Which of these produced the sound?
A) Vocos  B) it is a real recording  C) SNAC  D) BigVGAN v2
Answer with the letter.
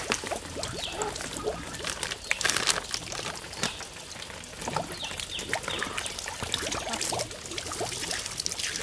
B